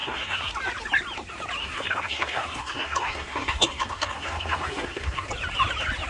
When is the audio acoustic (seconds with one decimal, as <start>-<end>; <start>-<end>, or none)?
0.5-1.6; 5.3-6.1